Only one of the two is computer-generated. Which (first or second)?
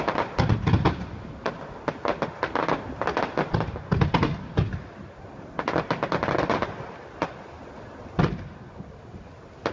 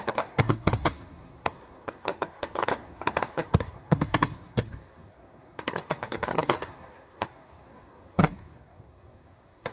second